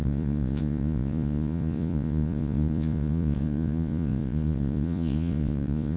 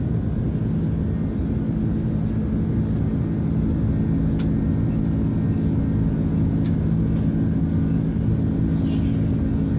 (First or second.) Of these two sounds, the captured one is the second